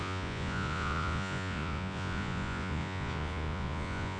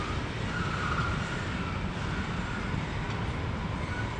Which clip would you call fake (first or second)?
first